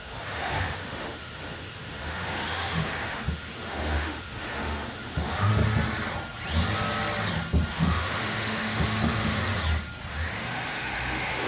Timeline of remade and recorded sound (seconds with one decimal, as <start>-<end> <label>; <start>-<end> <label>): 0.0-5.5 remade; 5.5-7.7 recorded; 7.7-9.5 remade; 9.5-10.1 recorded; 10.1-11.5 remade